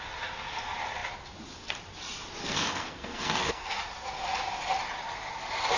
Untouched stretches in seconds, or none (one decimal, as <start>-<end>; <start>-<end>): 0.0-2.4; 3.8-5.8